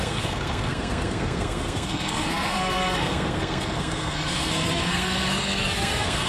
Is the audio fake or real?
fake